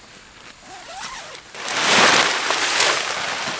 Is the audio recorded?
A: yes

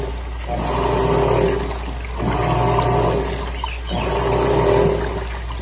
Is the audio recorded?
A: yes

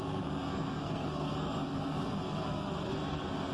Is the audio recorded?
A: no